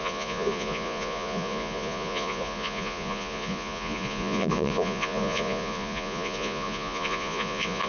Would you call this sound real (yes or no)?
no